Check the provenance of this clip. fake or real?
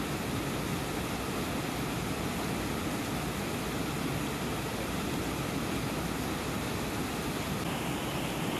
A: real